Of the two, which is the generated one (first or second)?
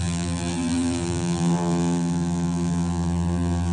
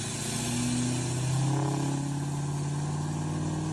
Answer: first